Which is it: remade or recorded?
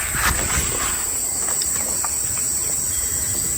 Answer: remade